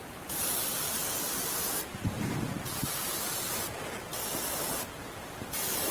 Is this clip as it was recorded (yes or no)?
yes